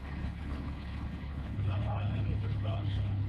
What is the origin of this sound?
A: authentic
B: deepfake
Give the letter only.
B